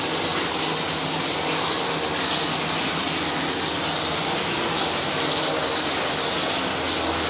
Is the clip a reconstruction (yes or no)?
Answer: no